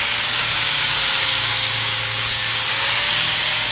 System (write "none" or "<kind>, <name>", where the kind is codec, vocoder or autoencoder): codec, DAC